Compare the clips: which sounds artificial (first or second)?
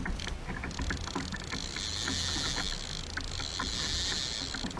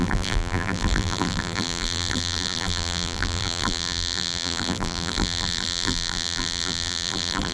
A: second